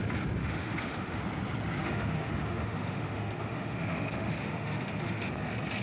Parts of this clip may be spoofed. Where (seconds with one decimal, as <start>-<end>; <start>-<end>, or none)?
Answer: 0.4-1.2; 1.8-5.3